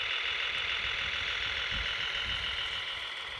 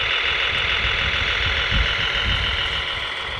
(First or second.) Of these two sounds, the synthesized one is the first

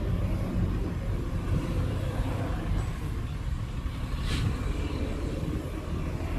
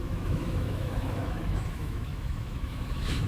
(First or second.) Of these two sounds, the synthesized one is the second